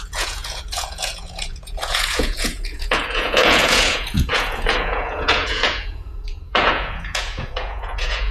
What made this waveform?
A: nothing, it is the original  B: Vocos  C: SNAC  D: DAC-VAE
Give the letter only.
B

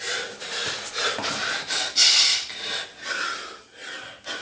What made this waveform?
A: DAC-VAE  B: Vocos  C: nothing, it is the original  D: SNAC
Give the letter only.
C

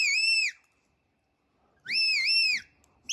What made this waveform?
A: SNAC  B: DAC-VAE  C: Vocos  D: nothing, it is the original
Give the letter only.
D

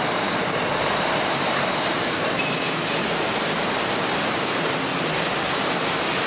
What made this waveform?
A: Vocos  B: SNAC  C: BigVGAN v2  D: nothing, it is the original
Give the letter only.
C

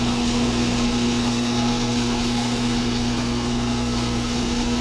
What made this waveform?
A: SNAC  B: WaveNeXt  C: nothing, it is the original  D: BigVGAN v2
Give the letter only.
A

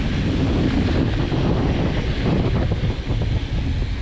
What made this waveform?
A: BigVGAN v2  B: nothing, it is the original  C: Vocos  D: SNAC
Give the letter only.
B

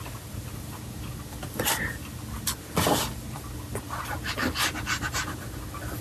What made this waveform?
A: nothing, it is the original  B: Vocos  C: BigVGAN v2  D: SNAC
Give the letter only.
A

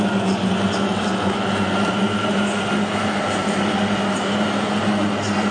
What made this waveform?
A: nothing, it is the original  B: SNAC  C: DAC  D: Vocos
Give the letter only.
A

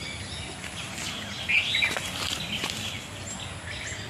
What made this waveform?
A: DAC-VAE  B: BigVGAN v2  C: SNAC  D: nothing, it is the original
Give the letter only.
D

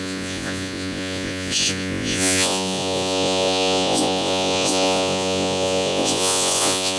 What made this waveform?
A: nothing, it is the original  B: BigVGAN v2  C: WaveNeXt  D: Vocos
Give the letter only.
D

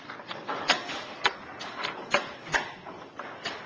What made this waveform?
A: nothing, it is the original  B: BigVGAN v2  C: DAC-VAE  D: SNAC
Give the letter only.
A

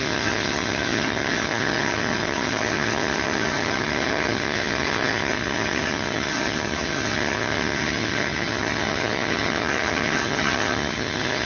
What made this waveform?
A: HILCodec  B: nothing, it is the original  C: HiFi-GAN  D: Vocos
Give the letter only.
C